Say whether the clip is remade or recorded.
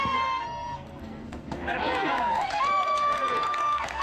remade